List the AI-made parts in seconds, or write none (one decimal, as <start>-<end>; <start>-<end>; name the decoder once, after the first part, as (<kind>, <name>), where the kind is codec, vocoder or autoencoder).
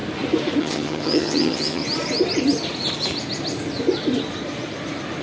0.6-1.8 (vocoder, HiFi-GAN)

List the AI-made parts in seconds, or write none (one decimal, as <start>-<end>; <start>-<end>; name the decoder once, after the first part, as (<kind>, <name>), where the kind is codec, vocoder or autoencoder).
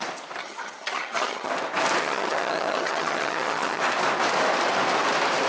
0.4-1.5 (vocoder, HiFi-GAN); 2.0-3.8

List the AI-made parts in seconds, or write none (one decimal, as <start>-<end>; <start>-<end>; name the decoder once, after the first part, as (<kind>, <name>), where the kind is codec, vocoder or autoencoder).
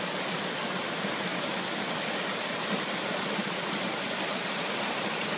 none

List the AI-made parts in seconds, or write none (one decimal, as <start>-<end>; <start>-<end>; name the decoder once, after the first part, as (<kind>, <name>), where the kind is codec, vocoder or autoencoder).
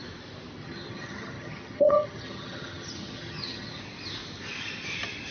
0.6-3.8 (vocoder, HiFi-GAN)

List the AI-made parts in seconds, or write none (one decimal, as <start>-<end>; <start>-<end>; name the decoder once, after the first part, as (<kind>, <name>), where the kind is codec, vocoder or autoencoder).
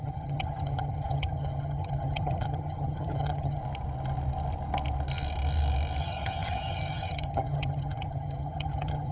0.0-3.6 (vocoder, HiFi-GAN); 6.0-9.1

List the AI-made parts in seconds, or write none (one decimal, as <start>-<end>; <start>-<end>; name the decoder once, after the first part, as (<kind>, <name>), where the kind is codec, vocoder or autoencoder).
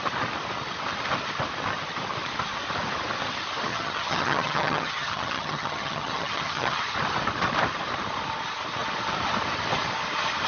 3.7-6.8 (vocoder, HiFi-GAN)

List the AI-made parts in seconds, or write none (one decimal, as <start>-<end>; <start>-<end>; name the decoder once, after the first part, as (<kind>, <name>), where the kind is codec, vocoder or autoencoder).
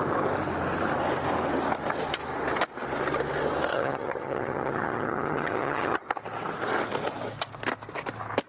3.7-6.1 (vocoder, HiFi-GAN)